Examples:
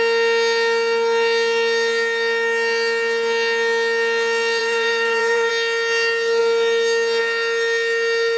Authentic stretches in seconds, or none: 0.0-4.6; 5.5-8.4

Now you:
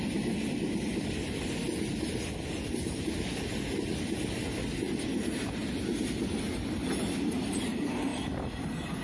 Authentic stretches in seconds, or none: 0.0-9.0

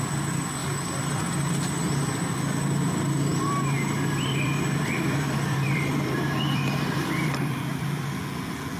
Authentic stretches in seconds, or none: 0.0-3.3; 8.2-8.8

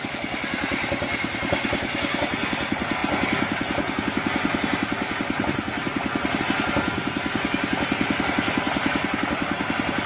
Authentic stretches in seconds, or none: 0.0-10.1